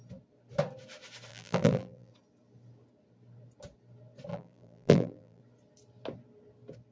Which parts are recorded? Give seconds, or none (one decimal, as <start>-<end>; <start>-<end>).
0.0-1.3; 2.1-4.3; 5.4-6.9